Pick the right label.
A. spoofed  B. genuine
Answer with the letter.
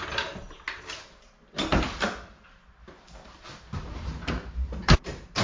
B